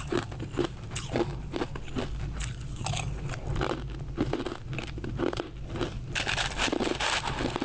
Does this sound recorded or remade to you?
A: recorded